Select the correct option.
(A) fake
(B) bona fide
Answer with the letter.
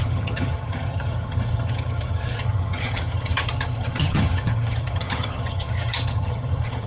A